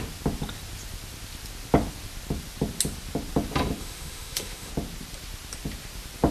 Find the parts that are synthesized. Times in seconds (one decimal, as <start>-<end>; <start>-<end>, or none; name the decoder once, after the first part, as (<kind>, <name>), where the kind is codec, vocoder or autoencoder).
3.8-4.7 (autoencoder, DAC-VAE)